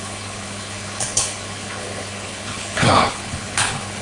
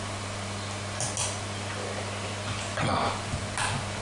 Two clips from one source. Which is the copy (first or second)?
first